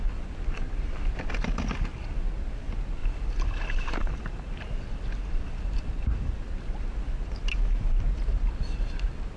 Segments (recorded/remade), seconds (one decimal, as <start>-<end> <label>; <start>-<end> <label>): 0.0-3.0 recorded; 3.0-6.4 remade; 6.4-9.4 recorded